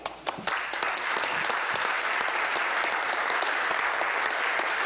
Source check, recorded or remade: recorded